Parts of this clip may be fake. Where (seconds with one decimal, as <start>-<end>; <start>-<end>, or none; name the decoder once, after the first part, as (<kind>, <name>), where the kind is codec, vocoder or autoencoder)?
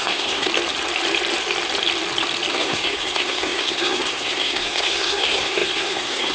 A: 0.0-0.5 (codec, SNAC); 2.5-6.3